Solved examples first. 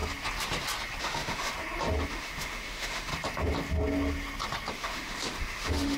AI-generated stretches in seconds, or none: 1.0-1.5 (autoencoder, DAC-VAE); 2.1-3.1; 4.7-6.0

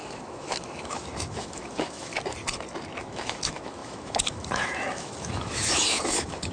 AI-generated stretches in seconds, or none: 0.0-2.1 (autoencoder, DAC-VAE); 3.0-6.5

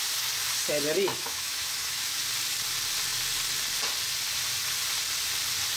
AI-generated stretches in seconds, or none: 1.1-2.2 (autoencoder, DAC-VAE)

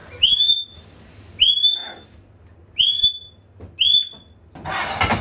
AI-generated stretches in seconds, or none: none